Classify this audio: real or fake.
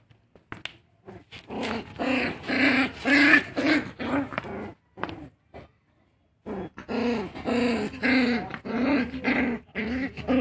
real